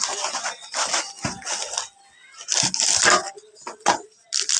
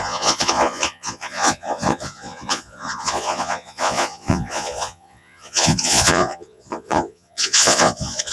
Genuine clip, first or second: first